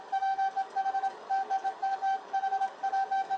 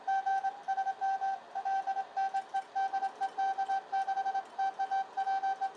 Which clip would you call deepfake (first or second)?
first